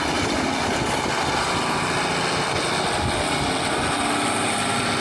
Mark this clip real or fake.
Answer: real